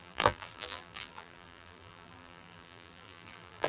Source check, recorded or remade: remade